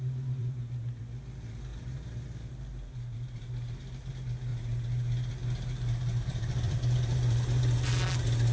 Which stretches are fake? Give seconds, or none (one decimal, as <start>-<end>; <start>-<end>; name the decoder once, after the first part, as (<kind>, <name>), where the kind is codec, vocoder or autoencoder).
0.4-1.0 (vocoder, BigVGAN v2); 1.7-4.1; 4.5-7.9